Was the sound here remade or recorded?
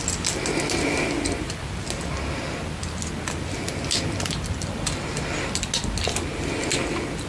recorded